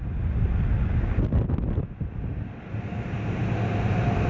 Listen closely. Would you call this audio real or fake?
real